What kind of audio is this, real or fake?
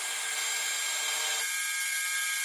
real